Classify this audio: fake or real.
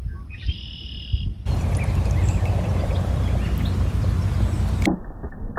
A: real